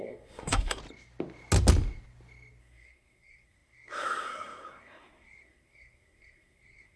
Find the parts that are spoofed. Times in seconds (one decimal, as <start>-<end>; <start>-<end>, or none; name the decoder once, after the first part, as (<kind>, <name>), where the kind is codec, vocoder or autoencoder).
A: 0.0-0.8 (codec, SNAC); 2.6-7.0